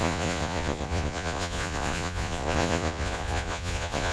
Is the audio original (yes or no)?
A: no